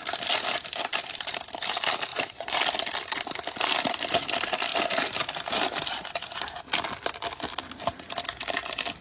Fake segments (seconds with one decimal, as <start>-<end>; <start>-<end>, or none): 2.1-2.6